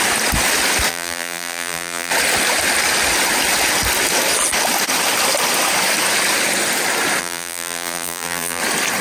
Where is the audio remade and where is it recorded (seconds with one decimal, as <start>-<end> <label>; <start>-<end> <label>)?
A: 0.0-0.9 recorded; 0.9-2.1 remade; 2.1-7.2 recorded; 7.2-8.6 remade; 8.6-9.0 recorded